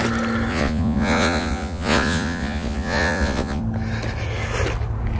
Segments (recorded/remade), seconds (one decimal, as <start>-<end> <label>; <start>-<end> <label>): 0.0-0.5 recorded; 0.5-3.6 remade; 3.6-5.2 recorded